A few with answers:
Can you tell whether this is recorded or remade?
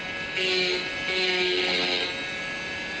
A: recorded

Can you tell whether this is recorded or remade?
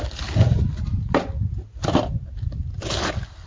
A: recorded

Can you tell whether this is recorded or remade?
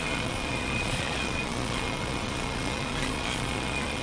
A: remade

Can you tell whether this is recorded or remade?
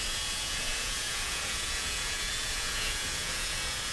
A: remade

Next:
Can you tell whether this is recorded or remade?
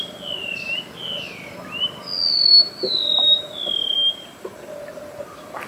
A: recorded